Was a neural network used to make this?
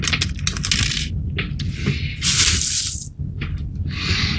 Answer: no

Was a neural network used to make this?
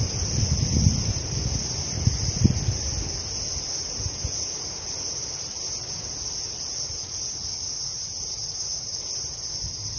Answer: no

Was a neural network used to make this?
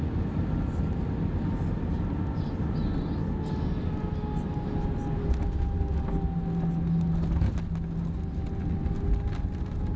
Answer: no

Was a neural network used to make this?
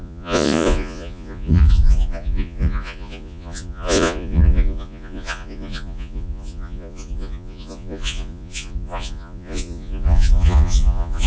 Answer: yes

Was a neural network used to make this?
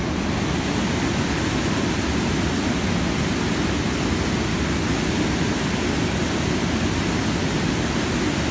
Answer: no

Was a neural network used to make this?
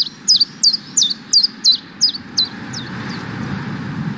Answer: no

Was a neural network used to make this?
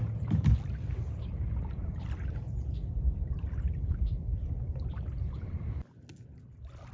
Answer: no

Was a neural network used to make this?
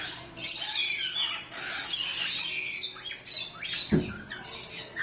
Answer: no